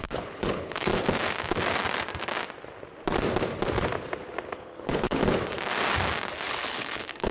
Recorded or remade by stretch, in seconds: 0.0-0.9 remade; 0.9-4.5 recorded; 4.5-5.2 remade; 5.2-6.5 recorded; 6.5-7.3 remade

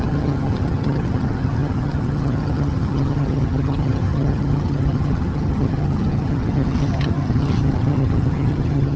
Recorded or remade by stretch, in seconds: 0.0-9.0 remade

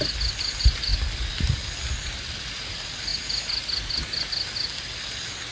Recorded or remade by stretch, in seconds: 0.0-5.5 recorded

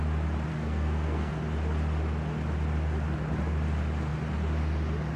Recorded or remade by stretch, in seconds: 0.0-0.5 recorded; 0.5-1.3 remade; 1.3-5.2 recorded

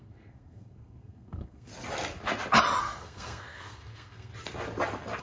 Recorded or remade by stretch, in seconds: 0.0-1.7 remade; 1.7-2.8 recorded; 2.8-4.3 remade; 4.3-5.2 recorded